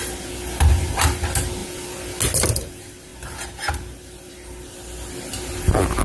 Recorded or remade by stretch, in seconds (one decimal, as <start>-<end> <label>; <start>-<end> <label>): 0.0-6.0 recorded